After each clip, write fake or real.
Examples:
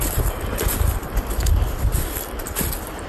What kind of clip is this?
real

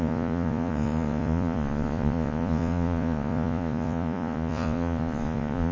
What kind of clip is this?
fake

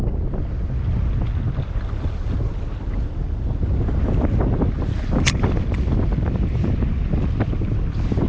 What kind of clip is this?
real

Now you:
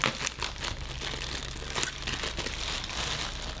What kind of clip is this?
real